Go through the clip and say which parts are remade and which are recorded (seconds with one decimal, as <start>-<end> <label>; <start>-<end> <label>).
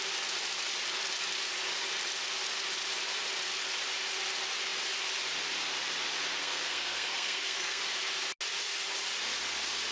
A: 0.0-6.4 recorded; 6.4-7.8 remade; 7.8-9.9 recorded